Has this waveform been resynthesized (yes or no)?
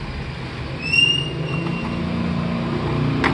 no